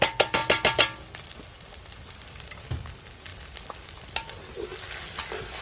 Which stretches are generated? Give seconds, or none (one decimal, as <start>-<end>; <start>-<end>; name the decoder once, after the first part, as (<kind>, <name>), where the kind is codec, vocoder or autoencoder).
none